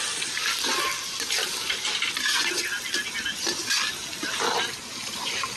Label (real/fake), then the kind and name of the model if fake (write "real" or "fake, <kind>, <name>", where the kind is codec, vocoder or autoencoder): real